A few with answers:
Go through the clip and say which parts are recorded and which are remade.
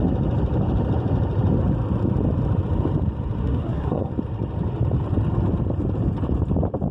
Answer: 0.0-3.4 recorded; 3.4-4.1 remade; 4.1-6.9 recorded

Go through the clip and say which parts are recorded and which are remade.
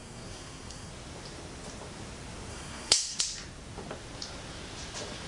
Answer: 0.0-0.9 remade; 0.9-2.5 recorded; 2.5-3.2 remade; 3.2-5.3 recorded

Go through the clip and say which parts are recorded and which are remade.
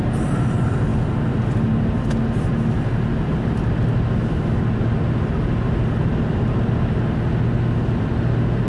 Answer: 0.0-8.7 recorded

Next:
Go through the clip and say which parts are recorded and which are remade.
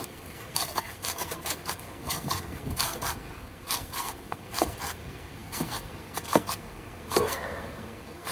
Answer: 0.0-8.3 remade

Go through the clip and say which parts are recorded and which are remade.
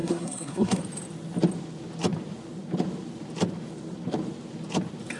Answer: 0.0-0.8 remade; 0.8-5.2 recorded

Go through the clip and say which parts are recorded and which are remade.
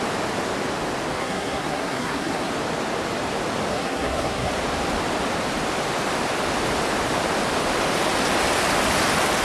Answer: 0.0-1.2 recorded; 1.2-2.5 remade; 2.5-3.7 recorded; 3.7-4.5 remade; 4.5-9.4 recorded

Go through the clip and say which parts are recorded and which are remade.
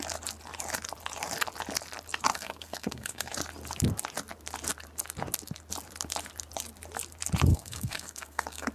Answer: 0.0-2.3 recorded; 2.3-3.3 remade; 3.3-7.5 recorded; 7.5-8.7 remade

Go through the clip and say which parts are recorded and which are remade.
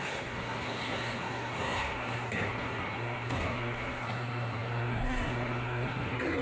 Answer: 0.0-6.4 remade